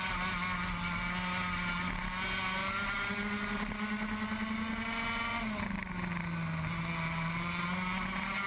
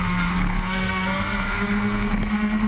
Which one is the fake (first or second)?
second